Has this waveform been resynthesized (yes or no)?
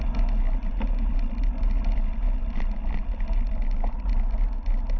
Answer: no